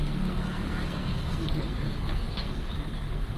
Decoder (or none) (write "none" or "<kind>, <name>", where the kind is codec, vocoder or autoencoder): codec, SNAC